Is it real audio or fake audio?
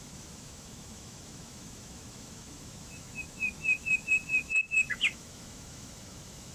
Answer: fake